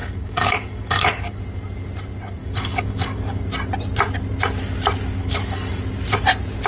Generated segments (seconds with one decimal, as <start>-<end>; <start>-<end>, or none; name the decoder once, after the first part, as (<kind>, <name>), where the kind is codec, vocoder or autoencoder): 0.0-1.4 (codec, DAC); 2.4-3.4; 5.2-5.8